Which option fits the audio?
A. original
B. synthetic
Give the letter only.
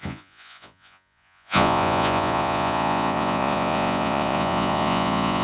B